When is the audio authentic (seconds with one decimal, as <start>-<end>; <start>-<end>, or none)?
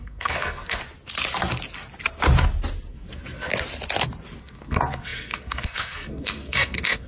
0.8-2.9; 3.5-4.4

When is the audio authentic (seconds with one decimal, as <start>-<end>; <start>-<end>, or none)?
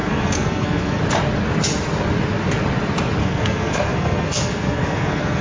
1.0-3.2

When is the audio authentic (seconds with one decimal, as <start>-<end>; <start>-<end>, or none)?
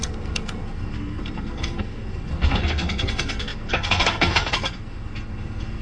none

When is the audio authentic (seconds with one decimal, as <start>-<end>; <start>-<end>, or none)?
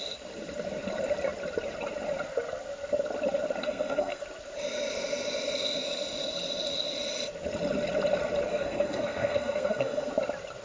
0.0-3.6; 4.2-8.5; 10.1-10.6